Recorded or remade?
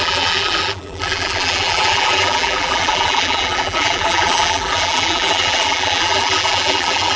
remade